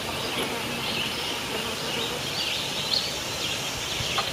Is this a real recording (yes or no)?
yes